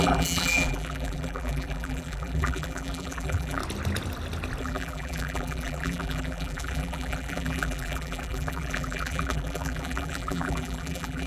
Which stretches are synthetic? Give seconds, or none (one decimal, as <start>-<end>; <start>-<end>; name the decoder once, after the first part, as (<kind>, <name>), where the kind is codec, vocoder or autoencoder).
0.0-3.6 (vocoder, BigVGAN v2); 4.6-11.3